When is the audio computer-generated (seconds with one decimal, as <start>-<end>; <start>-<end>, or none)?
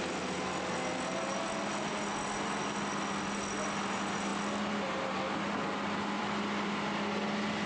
none